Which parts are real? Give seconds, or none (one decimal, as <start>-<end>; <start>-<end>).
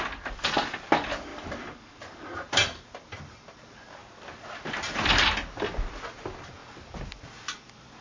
0.0-1.3; 2.0-6.6